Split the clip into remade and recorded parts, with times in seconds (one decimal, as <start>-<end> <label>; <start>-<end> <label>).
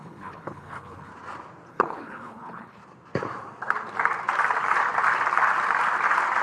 0.0-1.1 remade; 1.1-1.7 recorded; 1.7-2.8 remade; 2.8-6.4 recorded